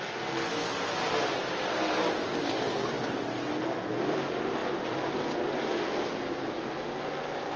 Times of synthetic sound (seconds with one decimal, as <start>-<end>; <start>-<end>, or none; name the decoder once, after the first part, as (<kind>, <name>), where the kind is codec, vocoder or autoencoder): none